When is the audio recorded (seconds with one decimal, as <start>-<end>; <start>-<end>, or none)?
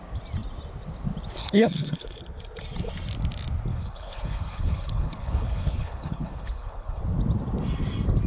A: 0.0-1.4; 2.2-3.7; 7.0-8.3